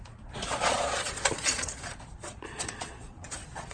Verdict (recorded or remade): remade